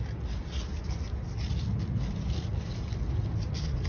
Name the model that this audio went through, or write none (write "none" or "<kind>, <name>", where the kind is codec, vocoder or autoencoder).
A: none